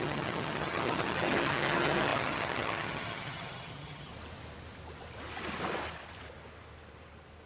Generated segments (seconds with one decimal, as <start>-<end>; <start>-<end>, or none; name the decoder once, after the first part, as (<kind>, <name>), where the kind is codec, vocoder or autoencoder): 0.0-4.1 (vocoder, HiFi-GAN)

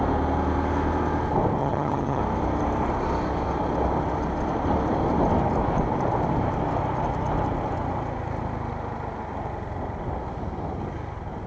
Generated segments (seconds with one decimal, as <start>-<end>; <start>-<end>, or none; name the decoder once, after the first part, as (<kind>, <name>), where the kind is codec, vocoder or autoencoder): 1.6-2.2 (vocoder, HiFi-GAN)

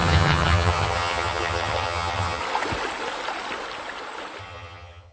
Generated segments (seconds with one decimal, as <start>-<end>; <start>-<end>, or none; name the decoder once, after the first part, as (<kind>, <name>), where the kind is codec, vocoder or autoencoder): 0.0-2.4 (vocoder, HiFi-GAN); 4.4-5.1

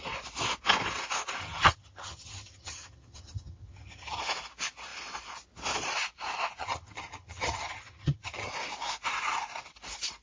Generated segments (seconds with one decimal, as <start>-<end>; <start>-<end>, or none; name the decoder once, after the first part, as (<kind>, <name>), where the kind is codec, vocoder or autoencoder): 1.4-4.2 (vocoder, HiFi-GAN); 6.6-8.5

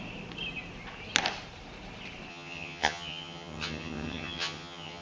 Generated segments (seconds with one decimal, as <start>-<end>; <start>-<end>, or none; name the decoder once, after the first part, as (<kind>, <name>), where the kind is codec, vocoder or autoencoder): 2.3-5.0 (vocoder, HiFi-GAN)

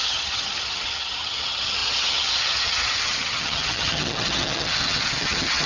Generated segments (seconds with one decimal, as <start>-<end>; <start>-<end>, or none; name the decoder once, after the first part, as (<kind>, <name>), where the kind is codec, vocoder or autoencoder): 0.0-5.7 (vocoder, HiFi-GAN)

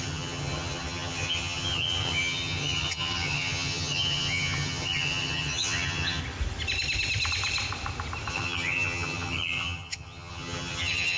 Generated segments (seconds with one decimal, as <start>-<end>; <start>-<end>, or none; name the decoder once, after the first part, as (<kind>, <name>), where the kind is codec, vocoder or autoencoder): 0.0-6.2 (vocoder, HiFi-GAN); 8.3-11.2